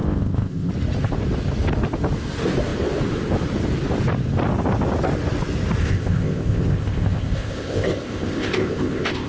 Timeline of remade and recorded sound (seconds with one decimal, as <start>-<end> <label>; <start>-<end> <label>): 0.0-0.7 remade; 0.7-5.8 recorded; 5.8-9.3 remade